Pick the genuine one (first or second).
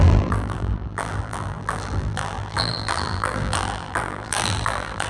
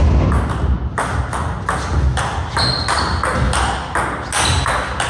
second